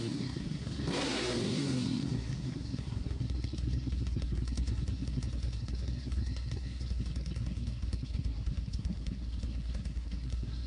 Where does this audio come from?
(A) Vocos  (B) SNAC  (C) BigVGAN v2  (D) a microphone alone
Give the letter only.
B